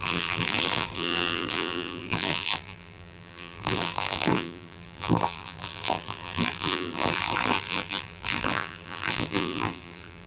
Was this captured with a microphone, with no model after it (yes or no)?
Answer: no